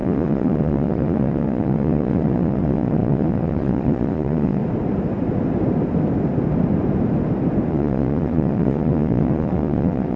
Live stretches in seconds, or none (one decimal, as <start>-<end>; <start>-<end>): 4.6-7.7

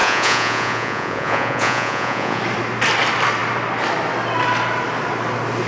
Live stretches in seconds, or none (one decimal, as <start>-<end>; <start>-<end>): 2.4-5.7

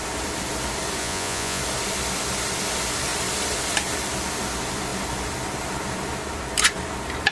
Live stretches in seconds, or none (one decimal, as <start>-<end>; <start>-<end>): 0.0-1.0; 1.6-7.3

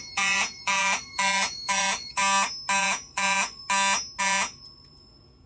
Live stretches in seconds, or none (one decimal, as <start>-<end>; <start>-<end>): 2.2-2.8; 3.6-4.2

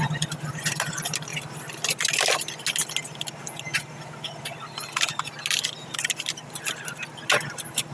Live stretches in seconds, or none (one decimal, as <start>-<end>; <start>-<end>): 0.0-7.9

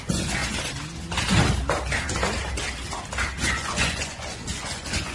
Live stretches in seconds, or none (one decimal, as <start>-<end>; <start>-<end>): 0.4-3.5